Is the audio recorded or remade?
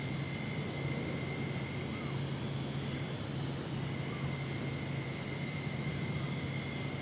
recorded